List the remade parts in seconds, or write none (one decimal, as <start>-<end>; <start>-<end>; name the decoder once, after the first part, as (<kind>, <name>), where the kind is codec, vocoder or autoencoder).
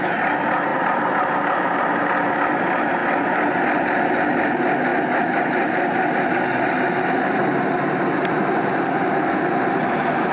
none